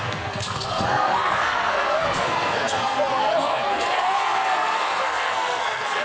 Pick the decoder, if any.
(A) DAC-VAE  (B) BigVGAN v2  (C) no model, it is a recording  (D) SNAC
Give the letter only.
D